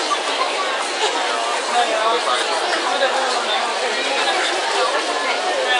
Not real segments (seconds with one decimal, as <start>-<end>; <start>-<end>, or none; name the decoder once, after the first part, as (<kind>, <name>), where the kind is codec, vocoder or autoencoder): none